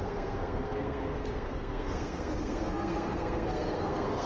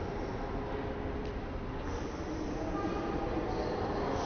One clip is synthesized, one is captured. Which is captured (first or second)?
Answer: second